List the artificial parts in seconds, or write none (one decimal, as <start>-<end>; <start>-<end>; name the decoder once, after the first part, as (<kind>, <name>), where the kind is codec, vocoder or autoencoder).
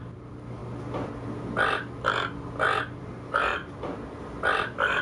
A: 3.5-4.2 (vocoder, BigVGAN v2)